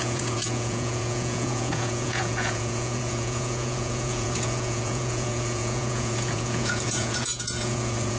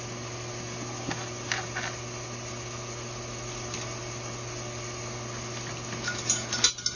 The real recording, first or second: second